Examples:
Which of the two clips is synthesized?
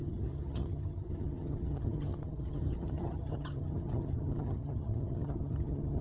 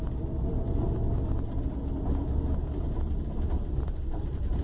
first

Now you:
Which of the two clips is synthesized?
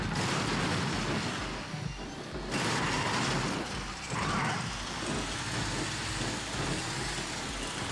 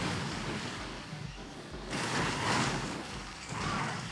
second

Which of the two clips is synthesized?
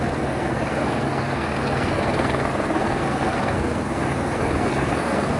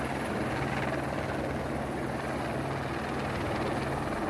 first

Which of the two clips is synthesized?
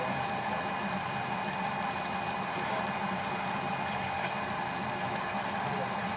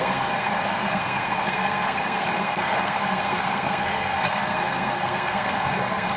second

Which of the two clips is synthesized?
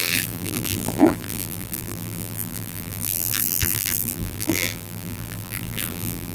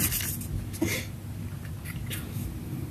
first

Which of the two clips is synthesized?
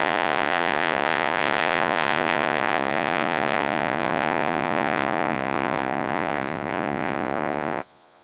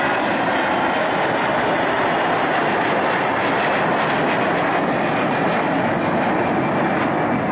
first